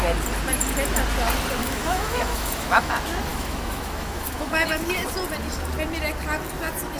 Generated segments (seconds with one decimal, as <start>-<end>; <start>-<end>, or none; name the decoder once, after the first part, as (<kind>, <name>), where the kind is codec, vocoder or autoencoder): 1.6-2.9 (autoencoder, DAC-VAE); 3.3-4.8